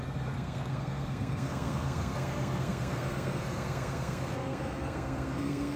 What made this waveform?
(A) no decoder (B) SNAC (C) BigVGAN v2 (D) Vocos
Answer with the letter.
B